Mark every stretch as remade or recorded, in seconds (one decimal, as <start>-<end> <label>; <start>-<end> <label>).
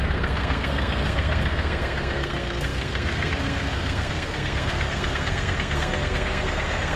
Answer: 0.0-7.0 remade